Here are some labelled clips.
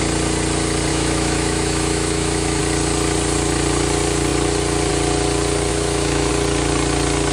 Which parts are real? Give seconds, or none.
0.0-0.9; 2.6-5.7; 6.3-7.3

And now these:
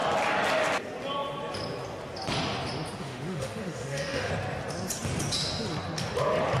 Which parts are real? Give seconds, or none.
0.0-3.0; 4.3-6.6

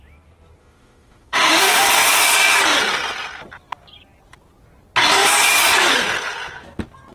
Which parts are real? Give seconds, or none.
0.0-0.6; 1.8-7.1

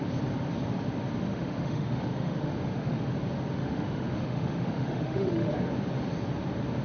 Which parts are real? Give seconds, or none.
0.0-1.3; 3.0-3.6; 5.5-6.8

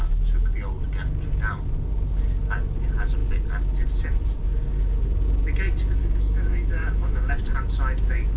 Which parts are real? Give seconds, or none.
0.0-6.0; 7.3-8.4

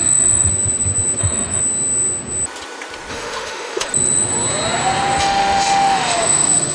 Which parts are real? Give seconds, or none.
0.5-1.2; 1.6-3.1; 3.9-5.2

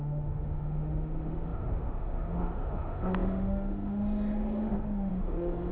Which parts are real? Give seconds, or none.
none